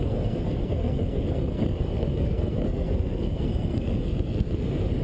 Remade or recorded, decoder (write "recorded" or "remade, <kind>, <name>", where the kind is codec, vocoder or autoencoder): remade, codec, SNAC